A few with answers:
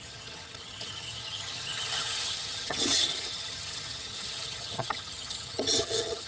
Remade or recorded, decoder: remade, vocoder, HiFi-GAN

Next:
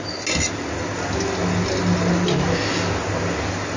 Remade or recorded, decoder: recorded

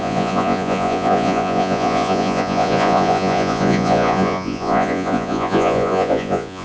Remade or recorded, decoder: remade, vocoder, Vocos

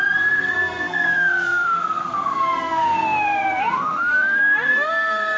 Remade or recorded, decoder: remade, codec, SNAC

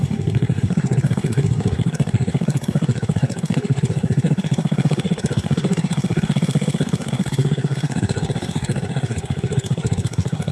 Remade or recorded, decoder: remade, codec, SNAC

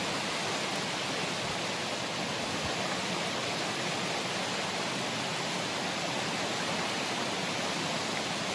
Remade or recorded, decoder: recorded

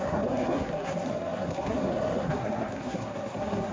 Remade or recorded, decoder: remade, codec, SNAC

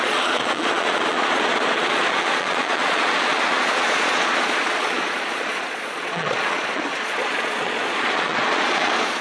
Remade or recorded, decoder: remade, vocoder, Vocos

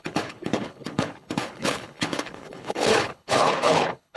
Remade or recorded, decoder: remade, codec, HILCodec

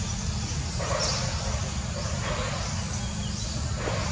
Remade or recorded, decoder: recorded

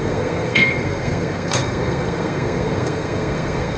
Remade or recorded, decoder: remade, codec, SNAC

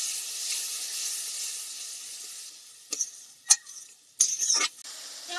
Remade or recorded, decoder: recorded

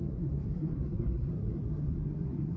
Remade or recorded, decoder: remade, codec, SNAC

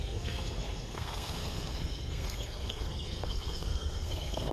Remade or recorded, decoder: remade, codec, SNAC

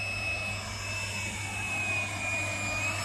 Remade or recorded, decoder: recorded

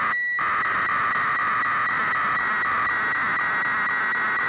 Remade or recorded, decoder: recorded